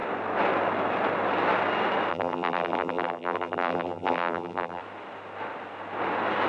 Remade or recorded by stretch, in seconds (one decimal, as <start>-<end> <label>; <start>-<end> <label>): 0.0-2.1 recorded; 2.1-4.8 remade; 4.8-6.5 recorded